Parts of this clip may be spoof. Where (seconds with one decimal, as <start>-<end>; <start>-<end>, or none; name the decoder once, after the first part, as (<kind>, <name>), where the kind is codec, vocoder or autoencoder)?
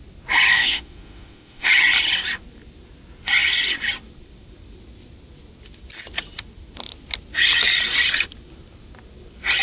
0.5-1.7 (autoencoder, DAC-VAE)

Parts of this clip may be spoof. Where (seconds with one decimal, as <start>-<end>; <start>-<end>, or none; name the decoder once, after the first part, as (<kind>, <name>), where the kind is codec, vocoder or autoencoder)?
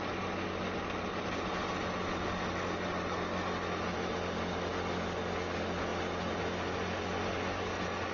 none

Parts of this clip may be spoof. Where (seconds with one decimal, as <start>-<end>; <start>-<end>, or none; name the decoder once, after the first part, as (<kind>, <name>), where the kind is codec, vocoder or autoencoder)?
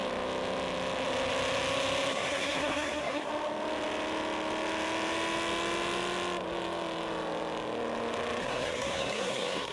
2.1-3.3 (codec, SNAC); 8.4-9.7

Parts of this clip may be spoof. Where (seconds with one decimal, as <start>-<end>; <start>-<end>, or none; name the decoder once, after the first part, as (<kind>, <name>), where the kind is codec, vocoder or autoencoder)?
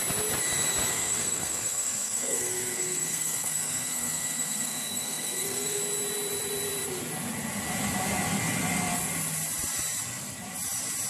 0.9-5.8 (codec, SNAC)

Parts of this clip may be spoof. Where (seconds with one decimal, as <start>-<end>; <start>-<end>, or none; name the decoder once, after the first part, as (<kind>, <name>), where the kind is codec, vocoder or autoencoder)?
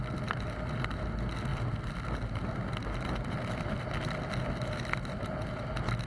none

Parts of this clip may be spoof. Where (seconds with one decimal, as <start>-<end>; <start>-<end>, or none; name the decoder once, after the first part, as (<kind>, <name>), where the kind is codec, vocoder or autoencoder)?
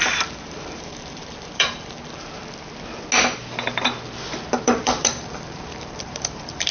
0.0-2.4 (vocoder, BigVGAN v2); 4.6-6.7